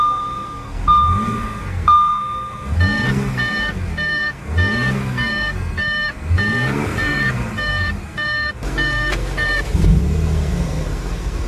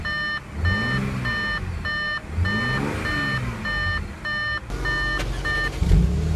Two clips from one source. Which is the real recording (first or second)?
second